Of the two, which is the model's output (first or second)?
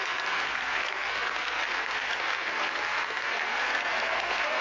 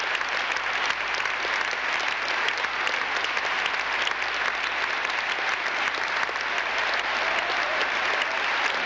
first